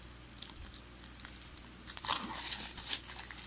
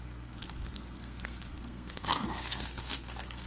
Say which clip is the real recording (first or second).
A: first